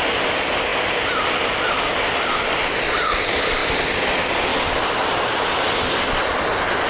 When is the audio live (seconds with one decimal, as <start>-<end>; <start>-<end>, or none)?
0.0-6.9